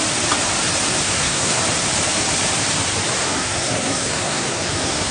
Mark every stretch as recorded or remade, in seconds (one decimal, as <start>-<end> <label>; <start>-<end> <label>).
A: 0.0-1.0 recorded; 1.0-1.6 remade; 1.6-3.2 recorded; 3.2-5.1 remade